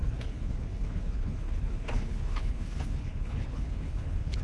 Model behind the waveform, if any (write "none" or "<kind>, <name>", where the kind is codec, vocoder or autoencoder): codec, HILCodec